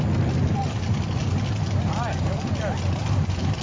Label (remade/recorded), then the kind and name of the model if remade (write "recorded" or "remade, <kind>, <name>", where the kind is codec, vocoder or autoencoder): recorded